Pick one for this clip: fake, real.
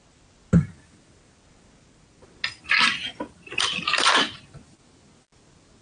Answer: real